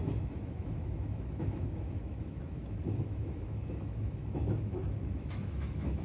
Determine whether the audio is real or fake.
fake